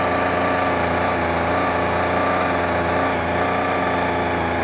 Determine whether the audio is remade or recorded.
recorded